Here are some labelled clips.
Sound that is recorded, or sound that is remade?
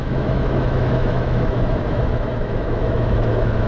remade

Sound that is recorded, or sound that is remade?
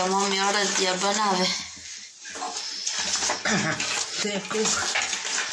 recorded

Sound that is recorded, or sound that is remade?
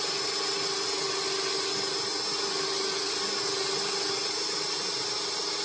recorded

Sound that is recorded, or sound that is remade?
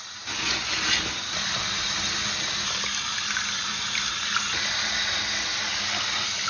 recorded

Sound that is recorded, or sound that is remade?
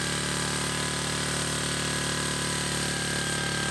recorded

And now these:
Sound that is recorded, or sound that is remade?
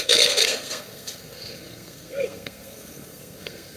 remade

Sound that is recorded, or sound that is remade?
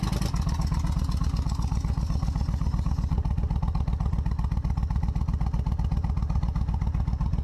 recorded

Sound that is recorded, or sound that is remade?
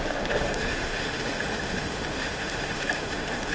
remade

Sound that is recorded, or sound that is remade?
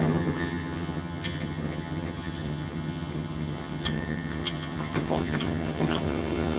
remade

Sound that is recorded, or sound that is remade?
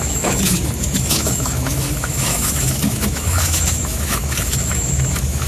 remade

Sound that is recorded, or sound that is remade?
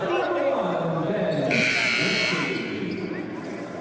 recorded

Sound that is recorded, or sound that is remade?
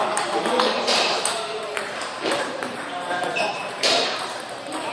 remade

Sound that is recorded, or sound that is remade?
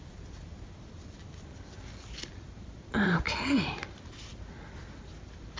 recorded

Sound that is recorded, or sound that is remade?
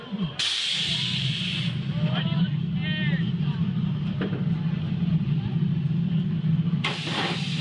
recorded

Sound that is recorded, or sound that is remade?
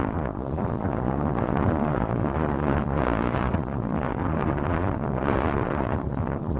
remade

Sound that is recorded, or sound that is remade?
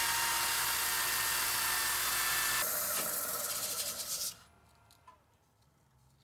recorded